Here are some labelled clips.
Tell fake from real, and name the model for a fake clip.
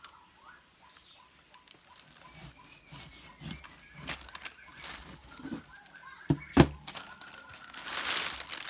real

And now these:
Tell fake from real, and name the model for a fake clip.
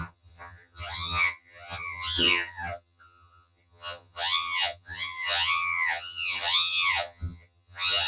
fake, vocoder, HiFi-GAN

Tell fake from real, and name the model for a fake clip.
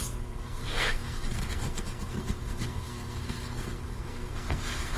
fake, codec, SNAC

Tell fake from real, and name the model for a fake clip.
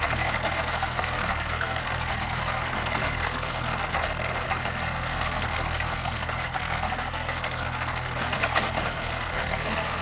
fake, codec, SNAC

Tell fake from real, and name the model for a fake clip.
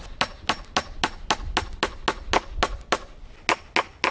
real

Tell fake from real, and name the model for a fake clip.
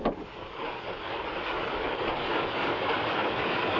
fake, codec, DAC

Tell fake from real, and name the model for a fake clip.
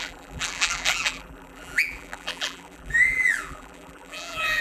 fake, vocoder, BigVGAN v2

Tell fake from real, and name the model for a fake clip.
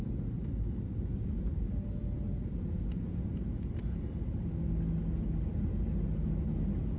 real